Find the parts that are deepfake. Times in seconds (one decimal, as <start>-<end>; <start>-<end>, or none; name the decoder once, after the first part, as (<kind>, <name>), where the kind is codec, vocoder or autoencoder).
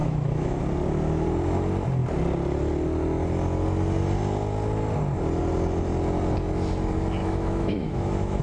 0.0-0.6 (autoencoder, DAC-VAE); 7.2-8.4